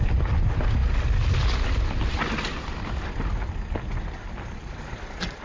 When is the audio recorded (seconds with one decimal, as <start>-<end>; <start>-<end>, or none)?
0.0-5.4